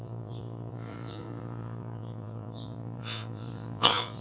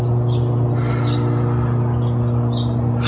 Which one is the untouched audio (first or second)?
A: second